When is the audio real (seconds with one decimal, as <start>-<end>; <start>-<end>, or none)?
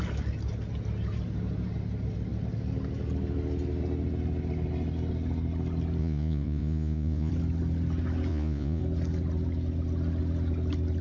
0.0-6.0; 7.3-8.3; 8.8-11.0